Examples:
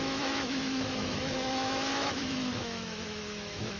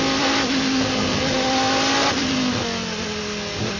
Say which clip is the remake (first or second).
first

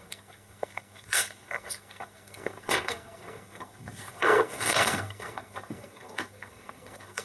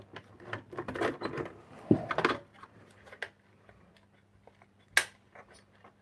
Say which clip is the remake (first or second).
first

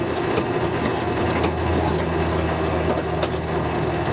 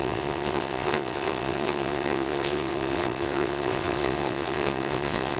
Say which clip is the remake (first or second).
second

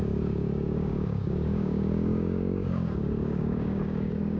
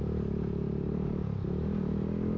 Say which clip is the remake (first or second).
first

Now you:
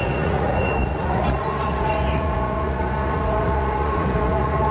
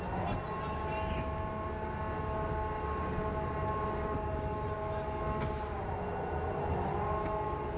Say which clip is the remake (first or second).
first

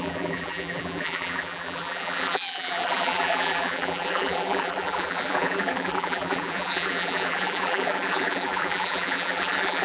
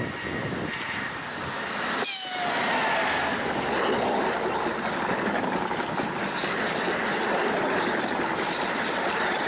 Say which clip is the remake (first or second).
first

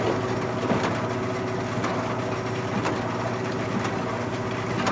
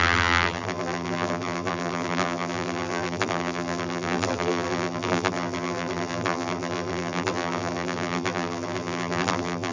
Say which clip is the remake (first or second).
second